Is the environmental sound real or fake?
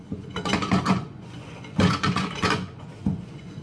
fake